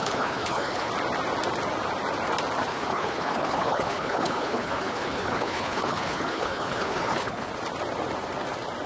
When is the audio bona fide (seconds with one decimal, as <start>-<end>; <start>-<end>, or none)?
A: 0.9-2.7; 7.5-8.9